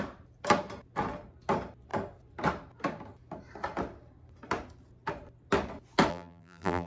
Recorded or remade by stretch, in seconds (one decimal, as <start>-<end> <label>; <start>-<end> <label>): 0.0-6.1 recorded; 6.1-6.9 remade